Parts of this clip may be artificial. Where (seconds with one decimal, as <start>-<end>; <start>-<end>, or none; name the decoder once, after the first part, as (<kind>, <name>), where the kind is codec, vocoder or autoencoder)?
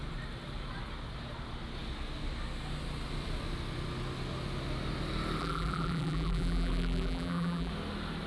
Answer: 5.4-7.7 (vocoder, BigVGAN v2)